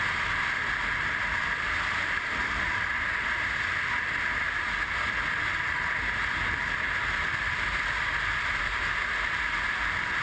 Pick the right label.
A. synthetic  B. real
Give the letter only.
B